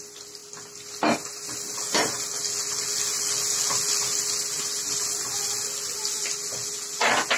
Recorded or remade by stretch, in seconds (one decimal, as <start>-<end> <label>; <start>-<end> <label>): 0.0-7.4 recorded